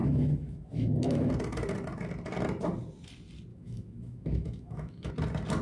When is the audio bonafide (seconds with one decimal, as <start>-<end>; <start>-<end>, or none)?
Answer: 1.3-3.5; 5.1-5.6

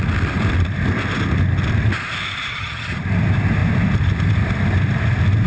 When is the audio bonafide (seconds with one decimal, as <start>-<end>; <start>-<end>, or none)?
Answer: 0.0-2.5; 3.0-5.5

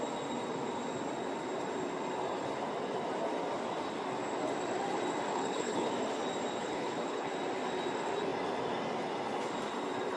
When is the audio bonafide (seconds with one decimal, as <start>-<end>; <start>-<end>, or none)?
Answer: 0.0-5.3; 5.9-6.6; 7.3-10.2

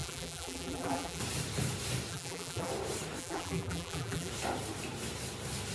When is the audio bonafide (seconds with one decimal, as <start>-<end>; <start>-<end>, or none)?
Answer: 1.2-2.1; 2.7-3.2; 4.3-5.7

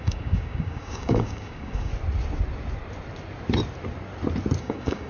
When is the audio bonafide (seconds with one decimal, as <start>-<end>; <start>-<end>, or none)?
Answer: 1.9-4.6

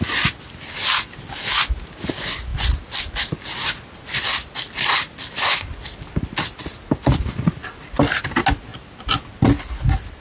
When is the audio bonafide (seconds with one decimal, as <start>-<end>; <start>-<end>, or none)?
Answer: 0.0-2.5; 6.6-7.6; 8.2-10.2